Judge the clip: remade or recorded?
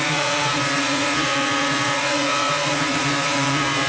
remade